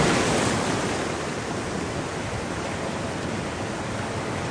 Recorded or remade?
recorded